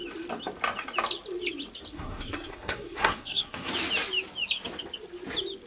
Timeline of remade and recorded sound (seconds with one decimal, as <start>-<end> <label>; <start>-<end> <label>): 0.0-1.9 recorded; 1.9-3.7 remade; 3.7-5.7 recorded

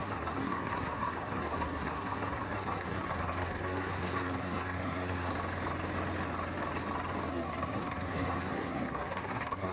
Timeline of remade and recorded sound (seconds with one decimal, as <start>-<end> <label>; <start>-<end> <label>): 0.0-5.3 remade; 5.3-7.3 recorded; 7.3-9.7 remade

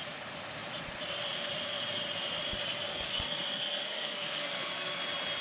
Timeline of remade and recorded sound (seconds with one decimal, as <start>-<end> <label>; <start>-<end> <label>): 0.0-2.9 recorded; 2.9-5.0 remade; 5.0-5.4 recorded